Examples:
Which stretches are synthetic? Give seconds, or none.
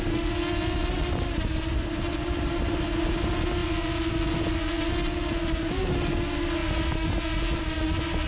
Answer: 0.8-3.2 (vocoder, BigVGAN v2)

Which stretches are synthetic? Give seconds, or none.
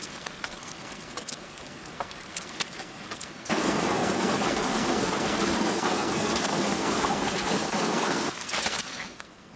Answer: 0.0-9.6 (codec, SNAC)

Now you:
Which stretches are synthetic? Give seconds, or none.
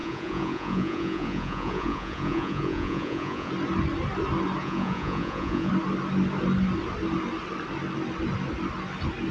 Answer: 0.0-3.5 (vocoder, Vocos); 4.6-5.7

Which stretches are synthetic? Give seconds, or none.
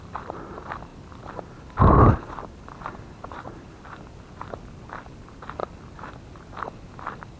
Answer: none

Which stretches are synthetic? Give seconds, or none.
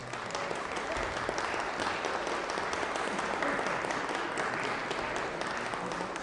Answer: none